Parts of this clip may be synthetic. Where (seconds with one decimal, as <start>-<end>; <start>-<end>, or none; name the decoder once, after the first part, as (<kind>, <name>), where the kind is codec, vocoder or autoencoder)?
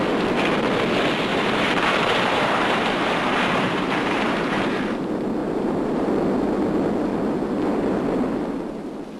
1.3-4.8 (vocoder, BigVGAN v2); 5.4-6.1